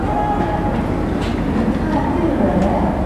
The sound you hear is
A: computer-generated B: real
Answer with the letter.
A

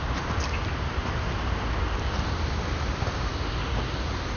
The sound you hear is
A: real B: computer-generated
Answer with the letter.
A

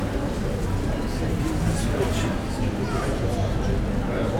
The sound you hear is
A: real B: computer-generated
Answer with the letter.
A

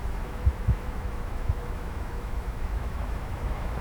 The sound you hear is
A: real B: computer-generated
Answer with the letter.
B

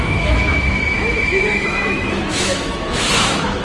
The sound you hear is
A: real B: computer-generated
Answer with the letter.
B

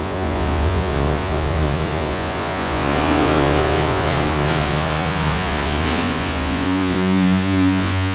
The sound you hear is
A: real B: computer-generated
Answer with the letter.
B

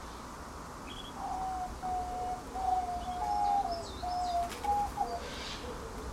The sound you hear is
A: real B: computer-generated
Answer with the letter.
A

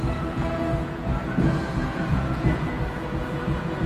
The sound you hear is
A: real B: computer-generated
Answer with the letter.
B